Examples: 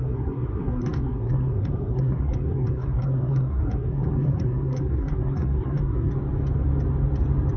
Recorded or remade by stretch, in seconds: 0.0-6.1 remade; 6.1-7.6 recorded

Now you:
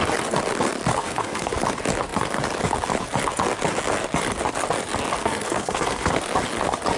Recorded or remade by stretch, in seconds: 0.0-0.9 recorded; 0.9-1.5 remade; 1.5-5.2 recorded; 5.2-6.1 remade; 6.1-7.0 recorded

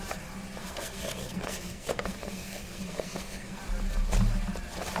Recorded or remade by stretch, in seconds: 0.0-0.6 recorded; 0.6-3.6 remade; 3.6-5.0 recorded

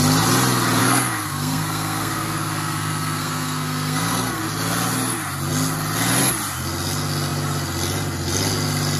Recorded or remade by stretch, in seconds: 0.0-0.8 recorded; 0.8-4.4 remade; 4.4-9.0 recorded

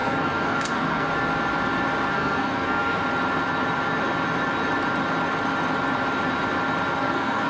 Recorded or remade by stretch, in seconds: 0.0-1.1 remade; 1.1-2.1 recorded; 2.1-3.0 remade; 3.0-7.0 recorded; 7.0-7.5 remade

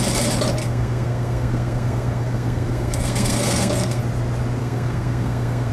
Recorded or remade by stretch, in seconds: 0.0-0.6 recorded; 0.6-4.0 remade; 4.0-4.6 recorded; 4.6-5.7 remade

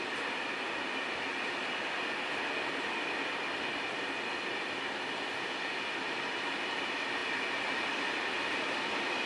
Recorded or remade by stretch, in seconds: 0.0-9.3 recorded

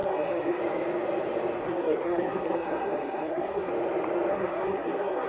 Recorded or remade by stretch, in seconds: 0.0-0.6 remade; 0.6-1.6 recorded; 1.6-3.7 remade; 3.7-4.3 recorded; 4.3-5.3 remade